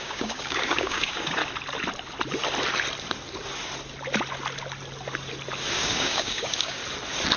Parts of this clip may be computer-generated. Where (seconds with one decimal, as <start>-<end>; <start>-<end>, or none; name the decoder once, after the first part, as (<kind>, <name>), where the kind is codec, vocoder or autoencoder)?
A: 0.0-1.4 (codec, DAC); 5.7-6.8